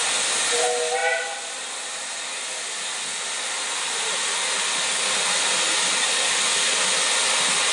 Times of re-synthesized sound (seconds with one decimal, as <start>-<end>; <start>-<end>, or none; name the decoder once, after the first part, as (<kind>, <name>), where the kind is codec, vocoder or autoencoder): none